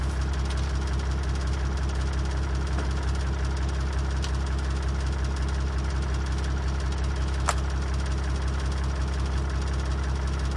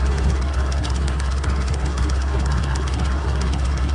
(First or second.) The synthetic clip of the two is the second